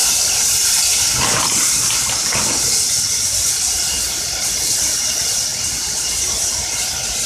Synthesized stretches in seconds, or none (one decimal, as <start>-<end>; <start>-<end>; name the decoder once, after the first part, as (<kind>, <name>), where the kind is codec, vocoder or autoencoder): none